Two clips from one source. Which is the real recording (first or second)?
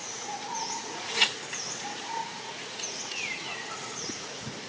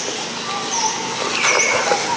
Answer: second